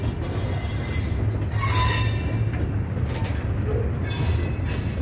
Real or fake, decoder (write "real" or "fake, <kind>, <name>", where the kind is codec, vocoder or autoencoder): real